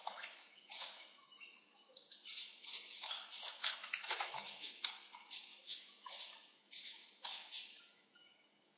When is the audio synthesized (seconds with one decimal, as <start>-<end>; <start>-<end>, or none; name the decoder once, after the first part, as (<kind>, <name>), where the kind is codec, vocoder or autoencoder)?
0.0-8.8 (autoencoder, DAC-VAE)